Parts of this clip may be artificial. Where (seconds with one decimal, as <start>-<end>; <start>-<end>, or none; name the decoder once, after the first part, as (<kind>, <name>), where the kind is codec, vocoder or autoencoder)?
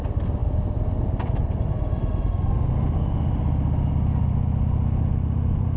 none